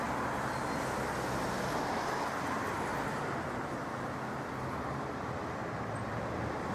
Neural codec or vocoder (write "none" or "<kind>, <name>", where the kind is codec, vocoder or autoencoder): none